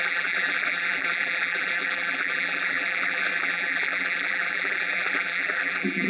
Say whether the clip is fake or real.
fake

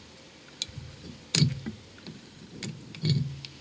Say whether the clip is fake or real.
real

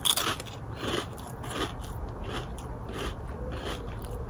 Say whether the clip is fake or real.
fake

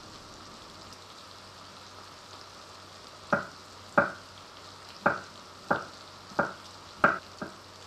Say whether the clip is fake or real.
real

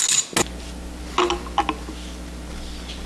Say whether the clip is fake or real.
real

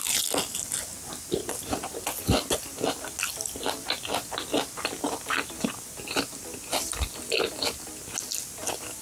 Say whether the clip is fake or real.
real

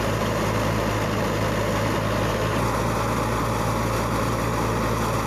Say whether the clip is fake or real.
real